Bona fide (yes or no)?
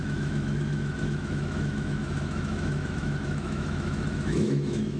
no